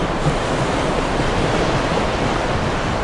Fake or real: real